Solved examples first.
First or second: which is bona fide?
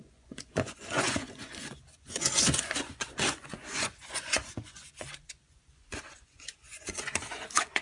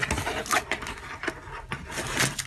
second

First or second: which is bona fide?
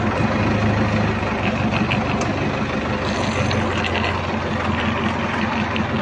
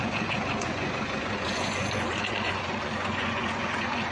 first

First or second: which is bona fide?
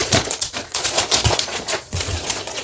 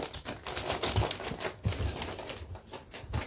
second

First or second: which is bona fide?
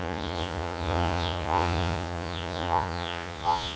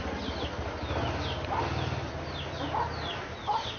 second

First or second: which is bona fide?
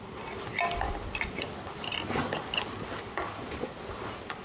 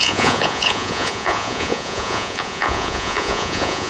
first